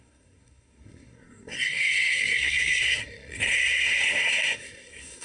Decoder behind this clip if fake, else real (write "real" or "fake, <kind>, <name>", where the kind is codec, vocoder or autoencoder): fake, codec, SNAC